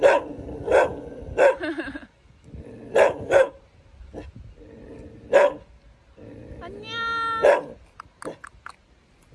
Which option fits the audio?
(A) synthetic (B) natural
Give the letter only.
B